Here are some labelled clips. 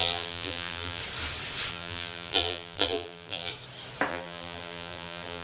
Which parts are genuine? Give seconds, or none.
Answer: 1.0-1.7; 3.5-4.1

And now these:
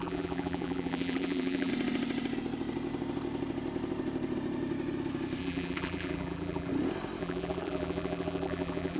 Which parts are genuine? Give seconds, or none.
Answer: 1.7-5.4; 6.7-7.2

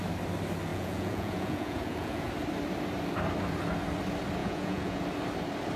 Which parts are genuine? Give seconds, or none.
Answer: 0.0-0.7; 2.3-4.4; 5.0-5.8

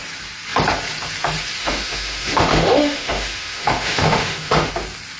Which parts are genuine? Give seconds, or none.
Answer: 0.0-1.6; 4.7-5.2

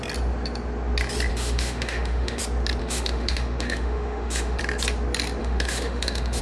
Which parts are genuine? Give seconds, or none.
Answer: 0.0-1.3; 2.4-2.8; 4.6-5.4